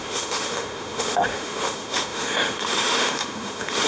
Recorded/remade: remade